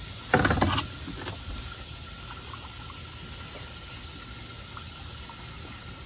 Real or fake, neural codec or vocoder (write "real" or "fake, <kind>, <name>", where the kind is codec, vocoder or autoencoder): real